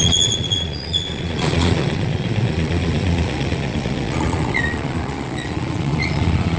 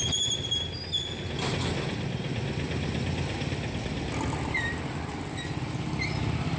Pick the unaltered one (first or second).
second